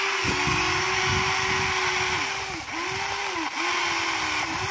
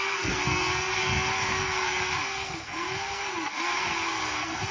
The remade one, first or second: second